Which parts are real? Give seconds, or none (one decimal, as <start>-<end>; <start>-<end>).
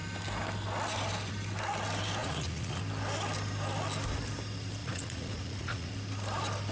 0.0-2.2; 2.8-4.8; 5.9-6.7